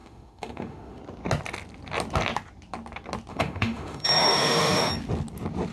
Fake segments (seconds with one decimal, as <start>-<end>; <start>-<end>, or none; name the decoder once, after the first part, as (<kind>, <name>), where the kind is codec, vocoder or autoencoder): 0.0-1.0 (autoencoder, DAC-VAE); 3.3-4.9